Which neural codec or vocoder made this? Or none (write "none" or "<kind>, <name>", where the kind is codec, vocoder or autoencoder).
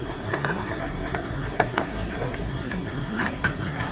codec, SNAC